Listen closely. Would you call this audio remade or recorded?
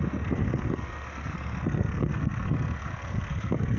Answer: remade